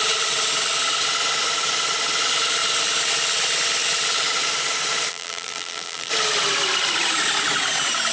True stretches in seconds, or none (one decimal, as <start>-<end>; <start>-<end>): 0.0-5.1; 6.1-8.1